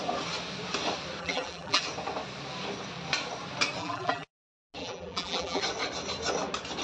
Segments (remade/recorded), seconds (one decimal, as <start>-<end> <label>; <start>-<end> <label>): 0.0-1.2 recorded; 1.2-1.8 remade; 1.8-3.8 recorded; 3.8-4.3 remade; 4.3-4.8 recorded; 4.8-5.6 remade; 5.6-6.8 recorded